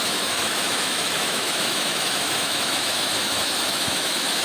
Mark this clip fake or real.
fake